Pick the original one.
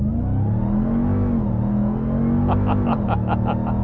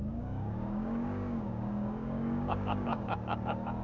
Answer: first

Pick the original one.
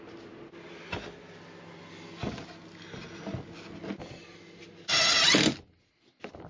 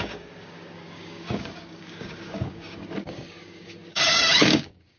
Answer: first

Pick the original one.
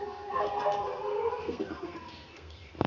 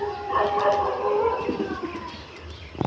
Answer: second